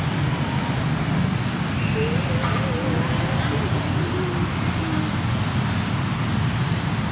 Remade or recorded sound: recorded